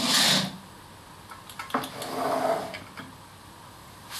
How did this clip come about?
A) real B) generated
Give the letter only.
A